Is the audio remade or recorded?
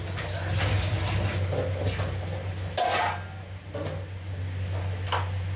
recorded